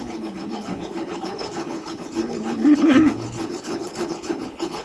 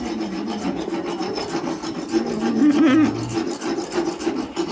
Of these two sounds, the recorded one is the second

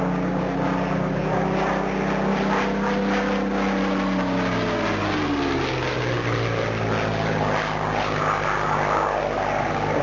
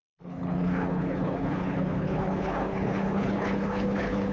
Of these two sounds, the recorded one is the first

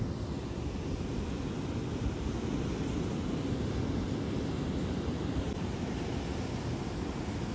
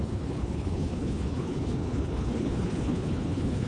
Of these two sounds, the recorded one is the first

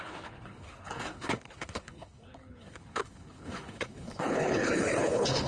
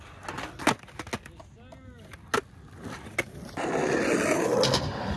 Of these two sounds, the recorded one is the second